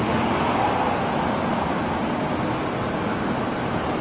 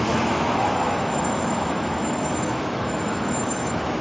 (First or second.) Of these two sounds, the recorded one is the first